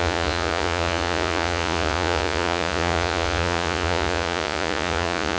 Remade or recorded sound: remade